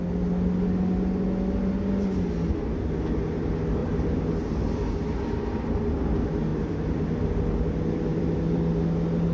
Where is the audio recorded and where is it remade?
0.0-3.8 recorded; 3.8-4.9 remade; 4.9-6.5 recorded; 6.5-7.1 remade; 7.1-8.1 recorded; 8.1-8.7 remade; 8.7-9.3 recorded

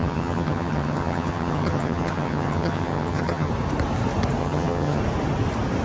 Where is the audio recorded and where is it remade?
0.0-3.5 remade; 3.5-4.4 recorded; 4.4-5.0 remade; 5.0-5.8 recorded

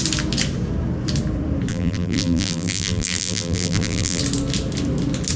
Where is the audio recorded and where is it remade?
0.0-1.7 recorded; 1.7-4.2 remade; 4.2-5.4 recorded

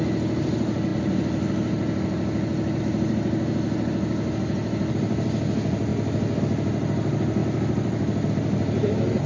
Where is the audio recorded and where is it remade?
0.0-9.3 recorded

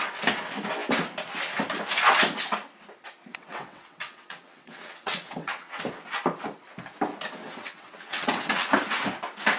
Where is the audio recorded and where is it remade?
0.0-3.3 recorded; 3.3-5.8 remade; 5.8-7.4 recorded; 7.4-8.7 remade; 8.7-9.6 recorded

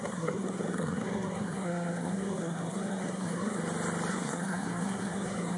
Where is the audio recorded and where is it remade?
0.0-3.6 remade; 3.6-4.1 recorded; 4.1-5.6 remade